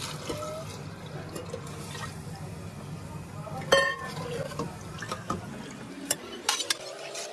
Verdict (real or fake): real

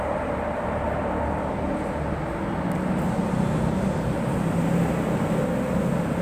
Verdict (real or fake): real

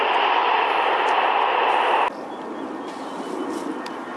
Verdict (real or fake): real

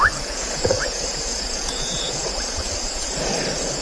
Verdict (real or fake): fake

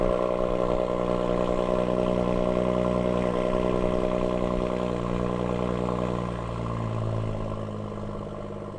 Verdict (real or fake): real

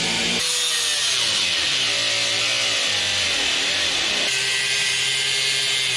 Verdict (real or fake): real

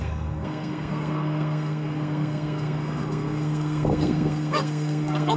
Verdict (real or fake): fake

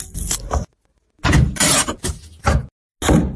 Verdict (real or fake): real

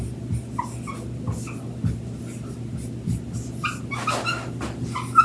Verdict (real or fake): real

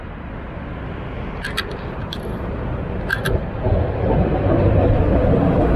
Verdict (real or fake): real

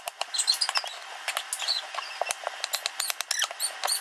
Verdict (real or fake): real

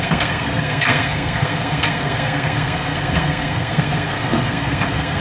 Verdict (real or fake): fake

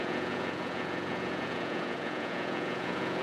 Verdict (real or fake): fake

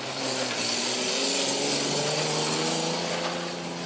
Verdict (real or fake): real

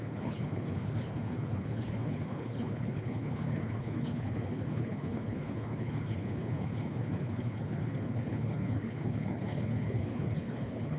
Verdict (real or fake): fake